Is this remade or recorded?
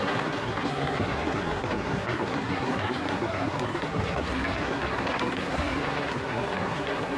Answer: remade